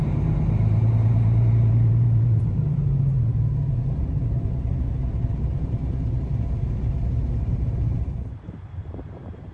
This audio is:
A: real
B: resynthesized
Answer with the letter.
B